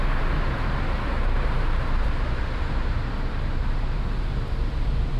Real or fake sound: fake